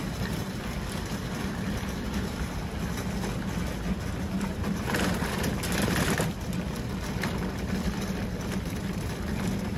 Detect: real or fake real